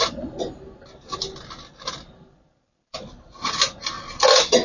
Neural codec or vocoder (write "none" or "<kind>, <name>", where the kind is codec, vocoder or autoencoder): none